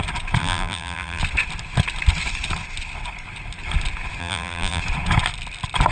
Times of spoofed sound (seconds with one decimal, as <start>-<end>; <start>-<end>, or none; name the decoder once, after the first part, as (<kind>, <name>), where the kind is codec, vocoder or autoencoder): 0.4-1.2 (vocoder, BigVGAN v2); 4.2-4.8

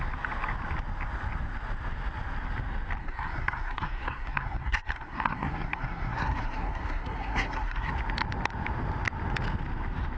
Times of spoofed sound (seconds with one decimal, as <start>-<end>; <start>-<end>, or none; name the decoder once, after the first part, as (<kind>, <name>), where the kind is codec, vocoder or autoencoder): 3.0-7.9 (codec, SNAC)